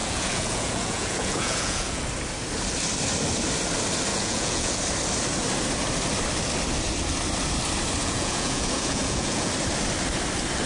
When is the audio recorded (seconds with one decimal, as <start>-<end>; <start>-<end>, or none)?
2.0-4.1; 4.8-8.0; 9.5-10.7